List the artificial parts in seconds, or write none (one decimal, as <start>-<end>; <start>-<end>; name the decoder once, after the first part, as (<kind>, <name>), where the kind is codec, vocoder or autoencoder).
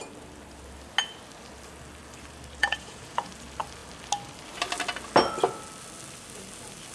2.6-3.3 (vocoder, Vocos)